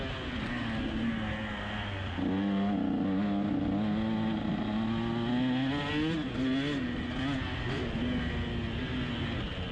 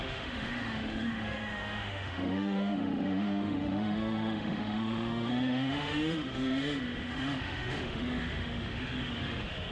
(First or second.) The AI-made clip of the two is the second